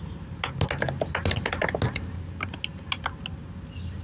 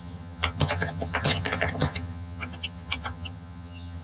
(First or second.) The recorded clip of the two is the first